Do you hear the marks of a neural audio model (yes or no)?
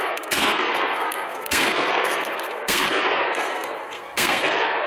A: yes